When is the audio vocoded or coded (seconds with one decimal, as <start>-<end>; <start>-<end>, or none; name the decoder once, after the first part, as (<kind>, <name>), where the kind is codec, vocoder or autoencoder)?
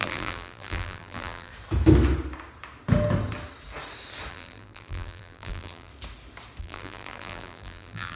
0.0-1.5 (vocoder, BigVGAN v2); 4.3-5.9; 6.6-8.2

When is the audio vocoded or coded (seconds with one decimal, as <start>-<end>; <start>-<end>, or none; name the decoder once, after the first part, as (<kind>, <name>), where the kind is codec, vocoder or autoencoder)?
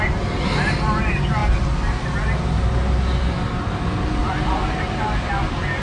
4.2-5.3 (vocoder, BigVGAN v2)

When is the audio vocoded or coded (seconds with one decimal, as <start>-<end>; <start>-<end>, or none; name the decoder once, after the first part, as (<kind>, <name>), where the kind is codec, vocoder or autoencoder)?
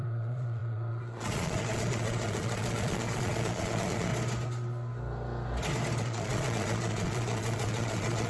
0.0-4.1 (vocoder, Vocos); 6.0-8.3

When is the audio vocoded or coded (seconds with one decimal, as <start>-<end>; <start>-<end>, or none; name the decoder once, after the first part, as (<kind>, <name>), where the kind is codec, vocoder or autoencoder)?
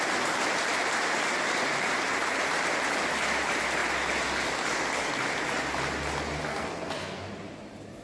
6.5-7.2 (codec, SNAC)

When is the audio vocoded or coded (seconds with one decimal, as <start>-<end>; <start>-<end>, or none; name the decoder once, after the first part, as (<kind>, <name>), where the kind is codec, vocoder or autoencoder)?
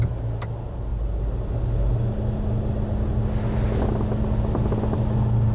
none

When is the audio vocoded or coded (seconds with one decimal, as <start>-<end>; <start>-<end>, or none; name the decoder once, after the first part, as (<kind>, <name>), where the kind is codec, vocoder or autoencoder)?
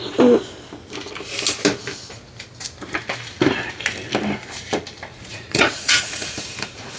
5.1-6.4 (vocoder, Vocos)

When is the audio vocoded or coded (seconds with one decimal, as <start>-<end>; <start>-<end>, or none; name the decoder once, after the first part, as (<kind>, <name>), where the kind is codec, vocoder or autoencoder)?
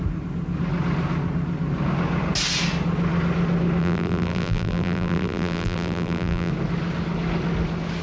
3.8-6.5 (vocoder, BigVGAN v2)